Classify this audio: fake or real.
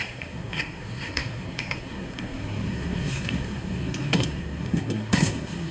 fake